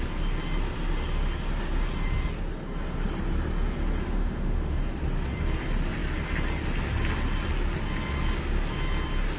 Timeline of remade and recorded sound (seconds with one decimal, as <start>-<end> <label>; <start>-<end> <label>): 0.0-4.0 recorded; 4.0-4.8 remade; 4.8-9.4 recorded